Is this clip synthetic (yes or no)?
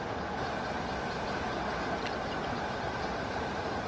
no